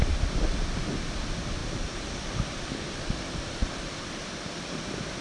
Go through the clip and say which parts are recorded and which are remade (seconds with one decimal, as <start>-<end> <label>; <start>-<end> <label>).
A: 0.0-1.6 recorded; 1.6-4.7 remade; 4.7-5.2 recorded

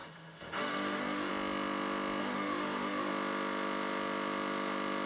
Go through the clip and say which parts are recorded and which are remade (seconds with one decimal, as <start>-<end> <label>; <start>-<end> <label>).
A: 0.0-1.3 remade; 1.3-2.2 recorded; 2.2-3.1 remade; 3.1-5.1 recorded

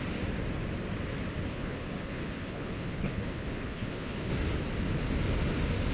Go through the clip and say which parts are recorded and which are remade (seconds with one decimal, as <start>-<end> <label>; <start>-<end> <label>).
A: 0.0-1.5 recorded; 1.5-4.3 remade; 4.3-5.9 recorded

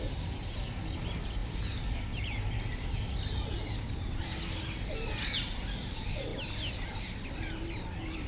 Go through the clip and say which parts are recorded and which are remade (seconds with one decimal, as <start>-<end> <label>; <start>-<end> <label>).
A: 0.0-8.3 recorded

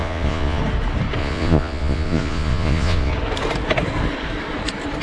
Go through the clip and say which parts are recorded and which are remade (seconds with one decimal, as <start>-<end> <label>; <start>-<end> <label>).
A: 0.0-0.6 remade; 0.6-1.2 recorded; 1.2-3.1 remade; 3.1-5.0 recorded

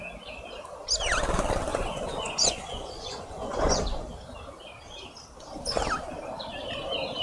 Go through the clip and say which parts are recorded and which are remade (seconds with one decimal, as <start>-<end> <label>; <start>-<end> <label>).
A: 0.0-1.7 recorded; 1.7-3.8 remade; 3.8-7.2 recorded